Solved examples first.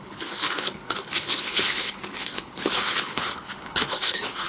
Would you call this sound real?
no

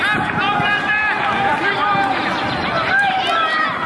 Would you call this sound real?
yes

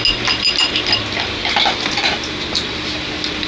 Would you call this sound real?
yes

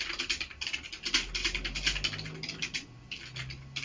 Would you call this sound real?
yes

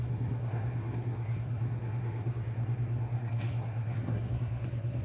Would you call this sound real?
no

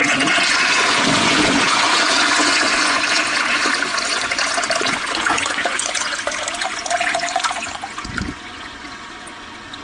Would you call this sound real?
no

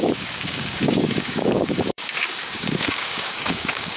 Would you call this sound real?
no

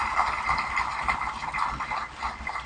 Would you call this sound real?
yes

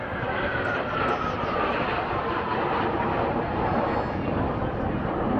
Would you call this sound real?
yes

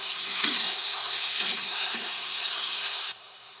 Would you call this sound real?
no